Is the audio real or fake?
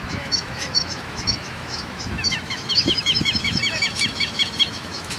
fake